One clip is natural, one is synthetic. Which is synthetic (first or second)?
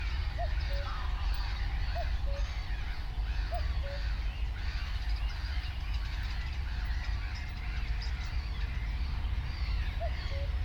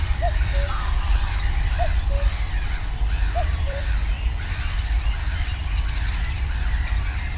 second